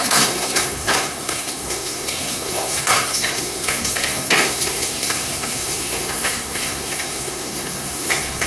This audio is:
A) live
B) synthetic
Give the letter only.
B